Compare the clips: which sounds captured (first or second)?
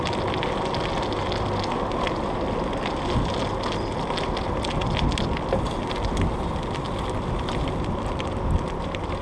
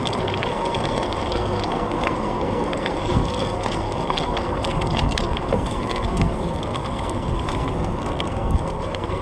first